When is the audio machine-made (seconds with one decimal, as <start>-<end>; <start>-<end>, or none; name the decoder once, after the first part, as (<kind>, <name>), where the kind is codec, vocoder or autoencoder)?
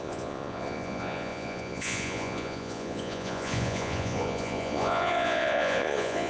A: 0.0-6.3 (vocoder, Vocos)